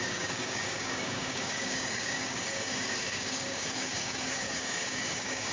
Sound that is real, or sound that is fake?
fake